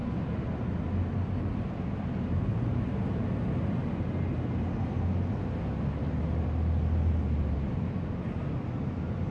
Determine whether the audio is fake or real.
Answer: real